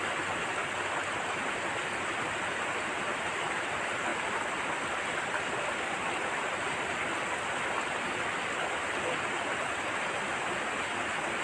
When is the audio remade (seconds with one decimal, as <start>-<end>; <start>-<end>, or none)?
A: none